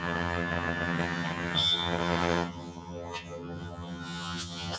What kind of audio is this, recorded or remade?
remade